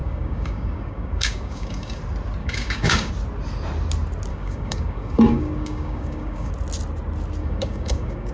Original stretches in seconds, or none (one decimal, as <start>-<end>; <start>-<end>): 2.0-2.4; 3.1-4.3; 6.5-7.4